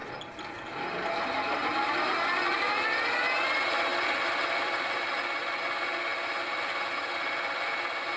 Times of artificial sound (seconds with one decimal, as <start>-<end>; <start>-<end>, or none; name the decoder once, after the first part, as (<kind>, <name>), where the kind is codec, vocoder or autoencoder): 0.0-0.8 (vocoder, BigVGAN v2); 3.9-5.1